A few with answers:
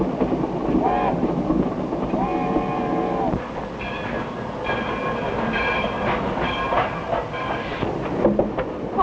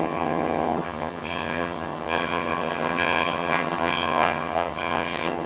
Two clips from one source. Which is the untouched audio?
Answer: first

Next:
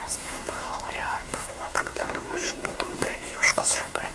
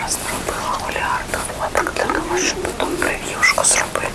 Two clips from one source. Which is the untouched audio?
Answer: second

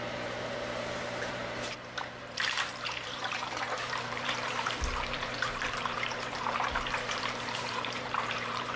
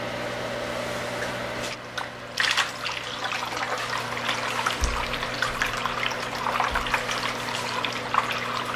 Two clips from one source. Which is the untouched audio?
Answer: second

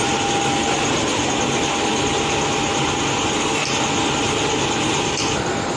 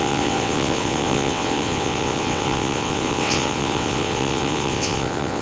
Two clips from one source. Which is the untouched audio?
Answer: first